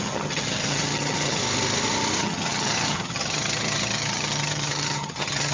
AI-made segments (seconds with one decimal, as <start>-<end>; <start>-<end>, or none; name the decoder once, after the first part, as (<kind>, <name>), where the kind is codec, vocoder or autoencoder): 0.0-1.4 (vocoder, HiFi-GAN); 2.2-5.5